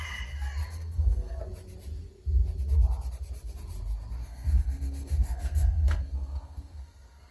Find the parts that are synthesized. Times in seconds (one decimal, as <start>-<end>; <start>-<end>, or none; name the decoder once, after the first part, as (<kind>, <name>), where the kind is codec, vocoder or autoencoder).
0.6-1.4 (codec, SNAC); 4.2-7.3